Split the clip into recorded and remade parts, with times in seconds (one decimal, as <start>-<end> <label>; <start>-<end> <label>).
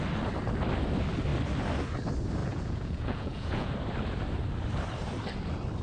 0.0-2.4 recorded; 2.4-3.7 remade; 3.7-5.8 recorded